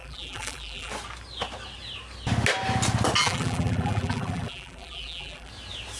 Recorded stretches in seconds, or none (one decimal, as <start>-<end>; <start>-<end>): 0.9-3.2; 5.5-6.0